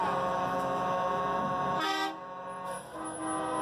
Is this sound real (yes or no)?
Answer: yes